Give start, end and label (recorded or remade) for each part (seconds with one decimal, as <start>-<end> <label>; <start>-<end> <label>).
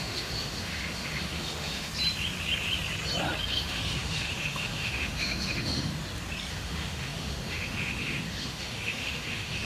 0.0-1.9 remade; 1.9-3.5 recorded; 3.5-5.9 remade; 5.9-6.5 recorded; 6.5-9.6 remade